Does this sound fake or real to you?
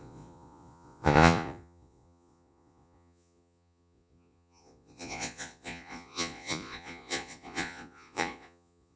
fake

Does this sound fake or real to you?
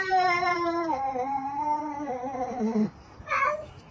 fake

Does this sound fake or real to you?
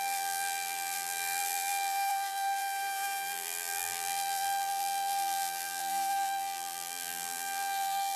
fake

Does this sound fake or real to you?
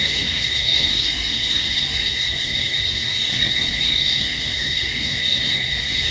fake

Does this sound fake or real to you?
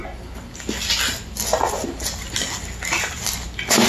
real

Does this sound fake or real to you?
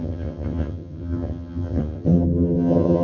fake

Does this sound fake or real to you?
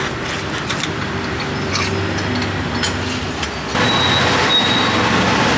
real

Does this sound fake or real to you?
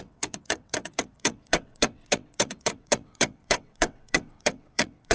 fake